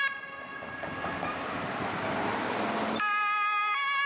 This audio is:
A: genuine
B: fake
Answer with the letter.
A